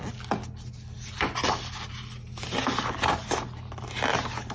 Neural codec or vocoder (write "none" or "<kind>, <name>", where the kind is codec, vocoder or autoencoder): none